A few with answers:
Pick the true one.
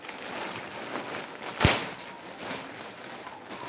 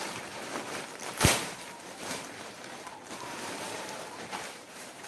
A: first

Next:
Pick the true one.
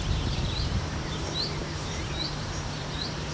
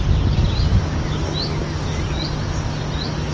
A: second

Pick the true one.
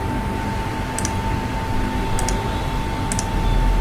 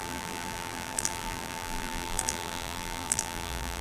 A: first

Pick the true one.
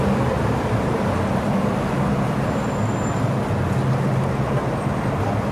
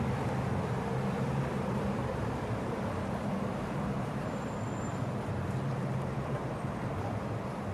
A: first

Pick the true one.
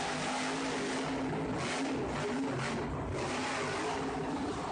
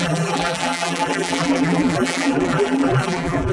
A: first